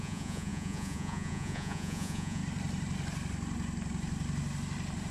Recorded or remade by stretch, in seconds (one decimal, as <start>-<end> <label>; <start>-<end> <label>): 0.0-2.4 remade; 2.4-5.1 recorded